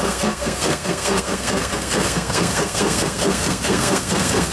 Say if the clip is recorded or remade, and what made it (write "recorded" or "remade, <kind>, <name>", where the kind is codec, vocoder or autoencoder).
remade, codec, SNAC